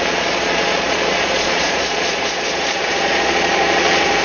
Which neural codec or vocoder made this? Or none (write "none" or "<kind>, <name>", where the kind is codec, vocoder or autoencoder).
vocoder, Vocos